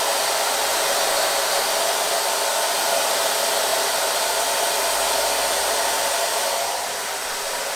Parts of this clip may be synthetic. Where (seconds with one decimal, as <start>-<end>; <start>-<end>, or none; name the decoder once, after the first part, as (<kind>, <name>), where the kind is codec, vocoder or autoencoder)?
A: none